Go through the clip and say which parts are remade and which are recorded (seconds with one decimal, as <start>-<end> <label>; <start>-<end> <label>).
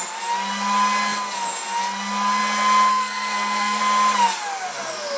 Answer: 0.0-2.9 recorded; 2.9-3.8 remade; 3.8-5.2 recorded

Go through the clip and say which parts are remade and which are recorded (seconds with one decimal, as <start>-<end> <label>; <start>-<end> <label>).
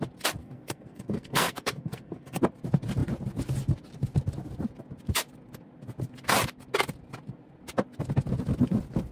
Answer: 0.0-0.4 recorded; 0.4-2.4 remade; 2.4-9.1 recorded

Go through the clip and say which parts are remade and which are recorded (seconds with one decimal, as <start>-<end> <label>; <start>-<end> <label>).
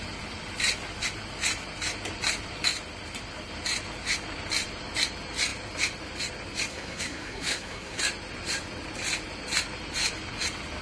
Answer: 0.0-6.7 recorded; 6.7-8.0 remade; 8.0-10.8 recorded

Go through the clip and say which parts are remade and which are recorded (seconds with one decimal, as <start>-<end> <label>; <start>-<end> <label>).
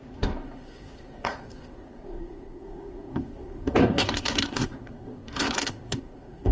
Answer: 0.0-6.5 remade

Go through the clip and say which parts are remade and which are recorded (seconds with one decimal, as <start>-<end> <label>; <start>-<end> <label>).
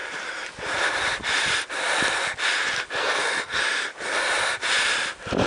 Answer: 0.0-3.0 recorded; 3.0-3.6 remade; 3.6-5.5 recorded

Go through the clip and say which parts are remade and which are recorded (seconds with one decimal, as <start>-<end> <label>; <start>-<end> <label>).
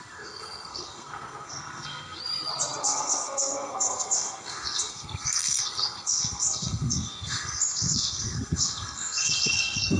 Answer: 0.0-2.2 remade; 2.2-2.8 recorded; 2.8-10.0 remade